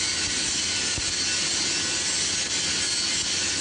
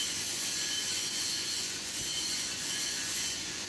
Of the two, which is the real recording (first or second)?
first